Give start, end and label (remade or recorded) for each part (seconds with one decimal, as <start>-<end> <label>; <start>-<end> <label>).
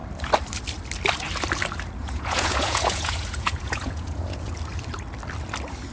0.0-2.0 recorded; 2.0-4.5 remade; 4.5-5.9 recorded